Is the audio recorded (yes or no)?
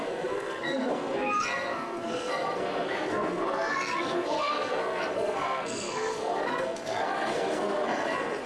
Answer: no